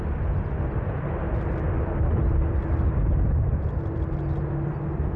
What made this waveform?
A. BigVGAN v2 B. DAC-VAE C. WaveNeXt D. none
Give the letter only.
D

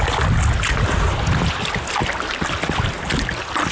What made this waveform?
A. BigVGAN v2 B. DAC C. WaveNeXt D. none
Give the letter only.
D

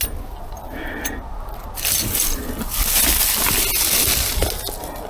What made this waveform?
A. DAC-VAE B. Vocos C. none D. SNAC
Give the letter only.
C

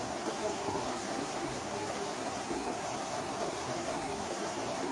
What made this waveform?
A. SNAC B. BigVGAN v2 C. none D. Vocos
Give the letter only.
A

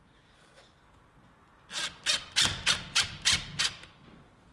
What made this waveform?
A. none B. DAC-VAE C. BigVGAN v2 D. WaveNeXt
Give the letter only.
A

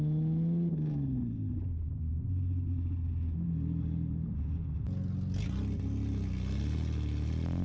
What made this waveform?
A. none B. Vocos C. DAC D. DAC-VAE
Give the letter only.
A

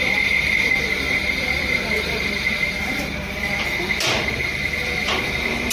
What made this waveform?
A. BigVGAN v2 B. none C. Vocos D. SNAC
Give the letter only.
A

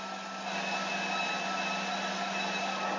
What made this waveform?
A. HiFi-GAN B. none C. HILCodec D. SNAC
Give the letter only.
B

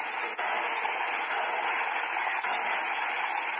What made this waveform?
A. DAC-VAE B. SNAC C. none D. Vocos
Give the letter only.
C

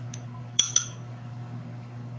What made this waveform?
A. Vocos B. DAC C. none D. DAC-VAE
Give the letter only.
B